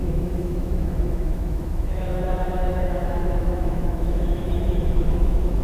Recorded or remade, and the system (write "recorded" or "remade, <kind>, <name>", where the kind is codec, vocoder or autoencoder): remade, autoencoder, DAC-VAE